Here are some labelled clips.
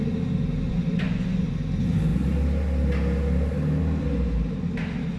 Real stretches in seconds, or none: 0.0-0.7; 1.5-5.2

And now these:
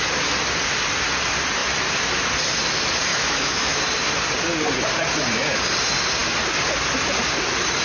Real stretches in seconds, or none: 0.0-3.1; 3.8-7.8

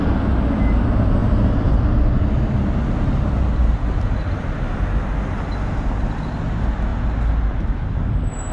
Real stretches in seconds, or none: 0.0-8.5

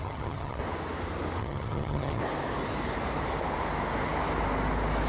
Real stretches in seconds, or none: 0.6-1.4; 2.2-5.1

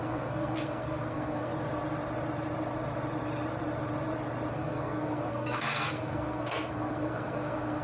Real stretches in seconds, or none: 1.5-4.5

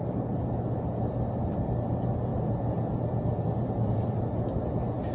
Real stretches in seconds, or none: 0.0-5.1

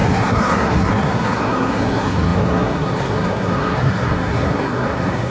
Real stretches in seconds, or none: none

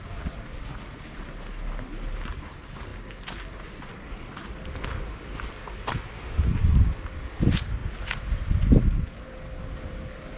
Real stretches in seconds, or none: 0.0-10.4